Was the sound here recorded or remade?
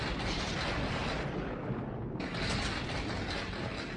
recorded